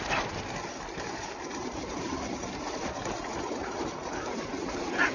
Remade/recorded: remade